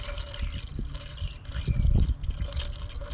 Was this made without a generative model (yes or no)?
yes